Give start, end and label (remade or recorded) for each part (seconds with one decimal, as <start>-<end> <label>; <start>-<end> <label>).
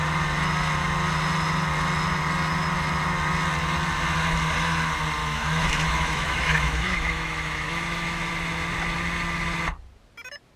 0.0-5.2 recorded; 5.2-8.3 remade; 8.3-10.6 recorded